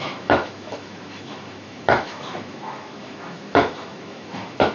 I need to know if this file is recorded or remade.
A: remade